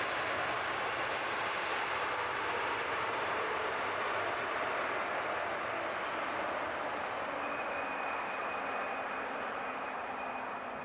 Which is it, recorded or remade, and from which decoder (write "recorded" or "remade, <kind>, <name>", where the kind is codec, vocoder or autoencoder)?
recorded